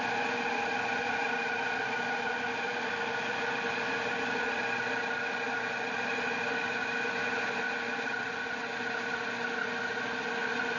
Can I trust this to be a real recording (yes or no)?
yes